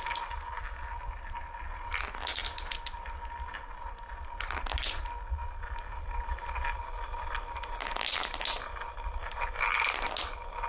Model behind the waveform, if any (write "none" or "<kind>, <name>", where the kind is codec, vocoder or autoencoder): none